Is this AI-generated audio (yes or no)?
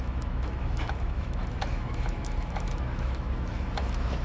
yes